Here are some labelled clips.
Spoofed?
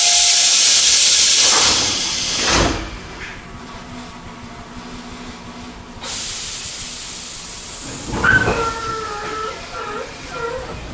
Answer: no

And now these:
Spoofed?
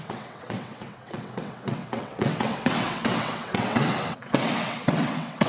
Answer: yes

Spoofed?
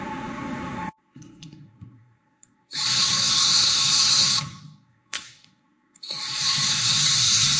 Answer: yes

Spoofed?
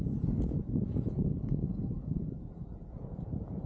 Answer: yes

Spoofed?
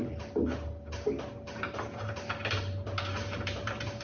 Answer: no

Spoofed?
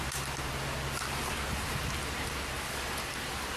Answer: no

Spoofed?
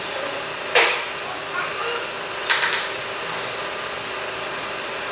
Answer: no